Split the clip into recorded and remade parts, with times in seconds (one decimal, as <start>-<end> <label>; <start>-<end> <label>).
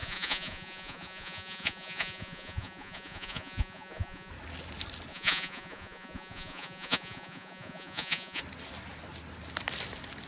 0.0-4.3 remade; 4.3-5.1 recorded; 5.1-8.4 remade; 8.4-10.3 recorded